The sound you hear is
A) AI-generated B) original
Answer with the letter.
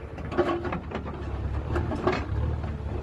B